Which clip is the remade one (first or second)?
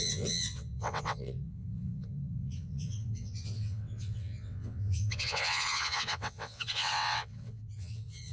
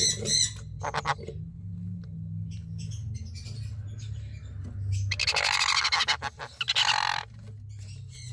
first